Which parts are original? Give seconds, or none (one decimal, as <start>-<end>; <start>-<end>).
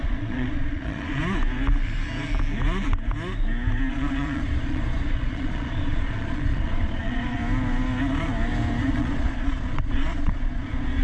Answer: 1.2-3.9; 7.4-8.9